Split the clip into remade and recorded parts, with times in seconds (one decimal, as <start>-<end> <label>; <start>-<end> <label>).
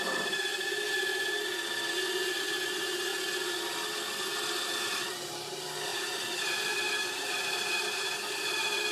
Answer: 0.0-0.5 remade; 0.5-2.3 recorded; 2.3-3.1 remade; 3.1-4.8 recorded; 4.8-8.9 remade